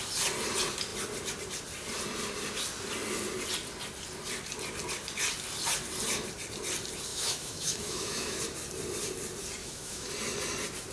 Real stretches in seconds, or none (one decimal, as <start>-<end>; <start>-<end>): 0.0-7.1; 8.4-9.6; 10.1-10.9